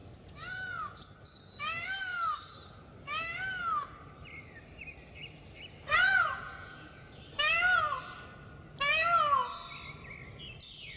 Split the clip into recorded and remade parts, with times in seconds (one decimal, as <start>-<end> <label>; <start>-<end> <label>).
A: 0.0-1.0 remade; 1.0-6.0 recorded; 6.0-7.2 remade; 7.2-11.0 recorded